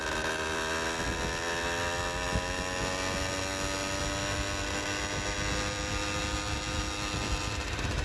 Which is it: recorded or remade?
recorded